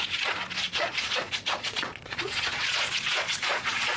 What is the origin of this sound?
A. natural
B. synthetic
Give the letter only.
B